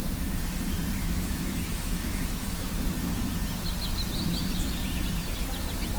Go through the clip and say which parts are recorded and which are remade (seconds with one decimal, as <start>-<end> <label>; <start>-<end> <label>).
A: 0.0-1.0 recorded; 1.0-2.7 remade; 2.7-6.0 recorded